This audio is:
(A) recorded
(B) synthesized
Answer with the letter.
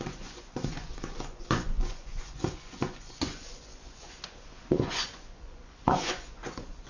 B